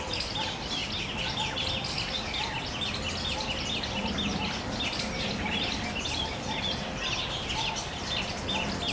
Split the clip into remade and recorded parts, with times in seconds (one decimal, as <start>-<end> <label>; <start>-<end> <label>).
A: 0.0-8.9 recorded